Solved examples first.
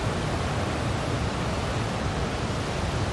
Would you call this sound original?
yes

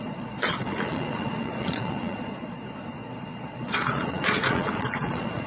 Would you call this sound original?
no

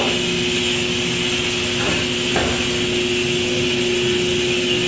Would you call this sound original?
yes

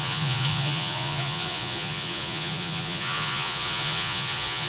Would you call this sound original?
no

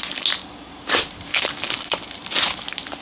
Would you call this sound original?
yes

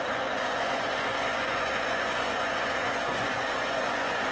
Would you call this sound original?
no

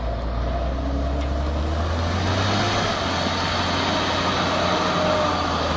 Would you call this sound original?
yes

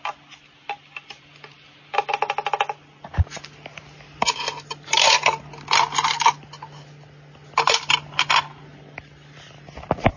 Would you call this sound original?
yes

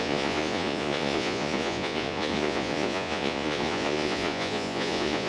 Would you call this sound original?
no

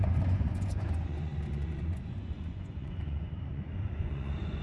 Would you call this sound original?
no